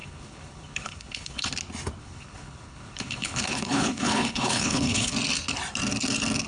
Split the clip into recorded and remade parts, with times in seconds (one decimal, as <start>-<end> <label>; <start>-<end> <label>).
0.0-1.5 remade; 1.5-2.0 recorded; 2.0-5.1 remade; 5.1-6.5 recorded